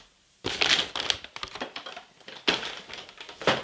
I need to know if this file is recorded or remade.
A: recorded